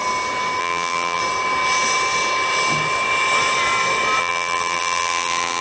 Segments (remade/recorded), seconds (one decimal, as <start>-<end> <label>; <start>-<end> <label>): 0.0-0.6 recorded; 0.6-1.2 remade; 1.2-4.2 recorded; 4.2-5.6 remade